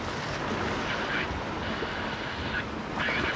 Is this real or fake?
real